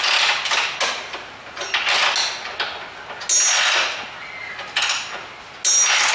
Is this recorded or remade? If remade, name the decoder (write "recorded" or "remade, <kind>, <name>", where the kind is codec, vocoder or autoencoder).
recorded